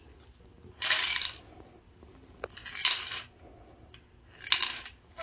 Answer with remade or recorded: recorded